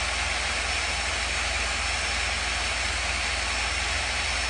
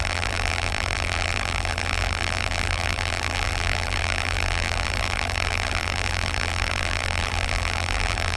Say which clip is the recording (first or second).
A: first